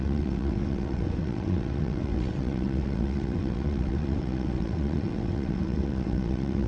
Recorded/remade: remade